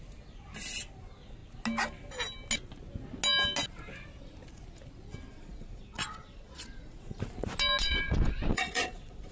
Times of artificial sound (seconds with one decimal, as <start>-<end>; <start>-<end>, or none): 5.3-7.2; 7.8-9.3